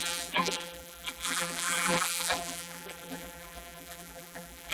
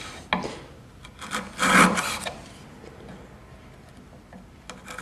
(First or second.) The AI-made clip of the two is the first